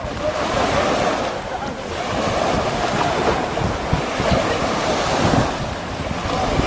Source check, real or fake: real